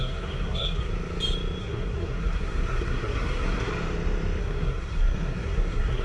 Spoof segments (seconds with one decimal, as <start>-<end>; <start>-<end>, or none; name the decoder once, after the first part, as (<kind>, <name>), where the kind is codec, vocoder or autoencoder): 0.0-0.9 (codec, SNAC); 1.6-3.7; 4.4-6.0